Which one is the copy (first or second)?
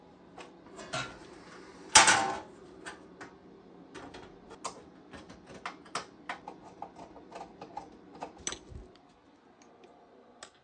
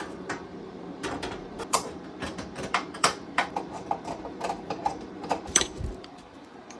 second